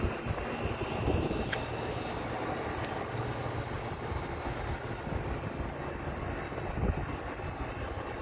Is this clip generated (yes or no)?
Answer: no